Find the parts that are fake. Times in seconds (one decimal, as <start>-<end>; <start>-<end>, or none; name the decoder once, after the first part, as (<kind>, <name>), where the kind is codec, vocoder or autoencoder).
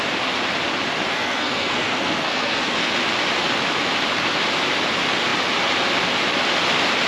1.1-2.9 (codec, SNAC)